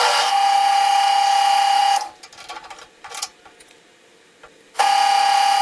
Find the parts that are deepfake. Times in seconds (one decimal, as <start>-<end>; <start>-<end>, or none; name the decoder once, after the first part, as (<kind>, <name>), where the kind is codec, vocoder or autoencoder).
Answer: none